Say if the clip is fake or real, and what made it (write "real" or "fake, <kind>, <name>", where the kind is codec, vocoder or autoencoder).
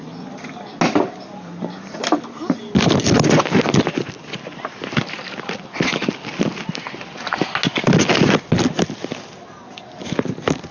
real